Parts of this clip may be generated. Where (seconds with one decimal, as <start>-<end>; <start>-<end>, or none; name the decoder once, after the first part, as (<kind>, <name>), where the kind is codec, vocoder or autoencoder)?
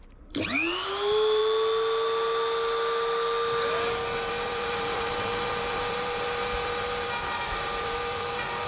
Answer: 0.0-1.4 (vocoder, BigVGAN v2); 4.3-8.7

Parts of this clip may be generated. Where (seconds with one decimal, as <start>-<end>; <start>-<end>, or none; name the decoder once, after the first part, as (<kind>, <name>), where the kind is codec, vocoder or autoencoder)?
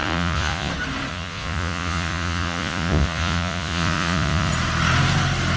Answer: 0.0-0.7 (vocoder, Vocos); 1.1-4.5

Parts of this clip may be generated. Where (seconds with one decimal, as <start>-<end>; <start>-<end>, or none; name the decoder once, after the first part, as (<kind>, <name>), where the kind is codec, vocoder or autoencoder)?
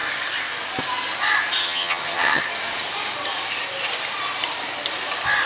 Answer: 1.6-2.4 (vocoder, HiFi-GAN)